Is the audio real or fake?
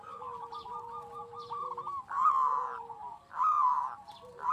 fake